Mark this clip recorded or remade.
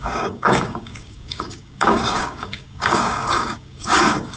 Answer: remade